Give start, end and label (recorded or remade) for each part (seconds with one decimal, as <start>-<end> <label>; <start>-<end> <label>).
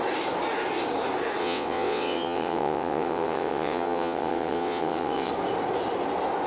0.0-1.4 recorded; 1.4-5.3 remade; 5.3-6.5 recorded